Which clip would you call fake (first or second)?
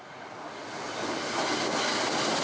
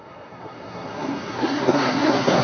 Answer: second